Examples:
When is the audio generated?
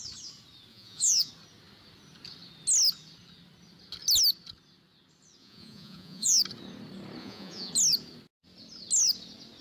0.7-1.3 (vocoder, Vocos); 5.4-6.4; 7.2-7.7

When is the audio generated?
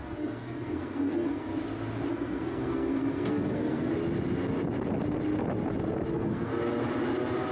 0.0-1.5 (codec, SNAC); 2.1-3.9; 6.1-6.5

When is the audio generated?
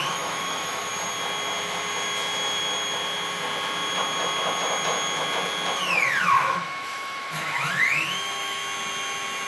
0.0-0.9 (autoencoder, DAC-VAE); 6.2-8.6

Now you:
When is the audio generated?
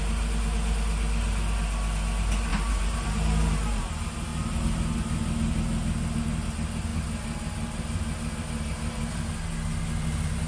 2.5-3.9 (vocoder, BigVGAN v2)